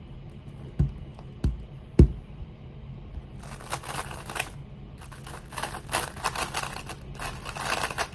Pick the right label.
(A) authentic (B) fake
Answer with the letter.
A